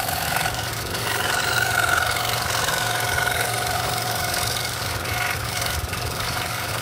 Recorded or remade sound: remade